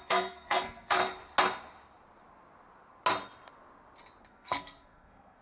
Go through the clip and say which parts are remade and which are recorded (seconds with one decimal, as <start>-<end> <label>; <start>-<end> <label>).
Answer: 0.0-1.0 remade; 1.0-4.2 recorded; 4.2-5.4 remade